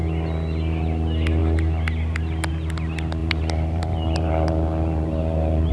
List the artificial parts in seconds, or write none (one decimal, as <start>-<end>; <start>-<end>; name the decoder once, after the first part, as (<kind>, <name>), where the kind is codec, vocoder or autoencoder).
3.2-5.7 (vocoder, BigVGAN v2)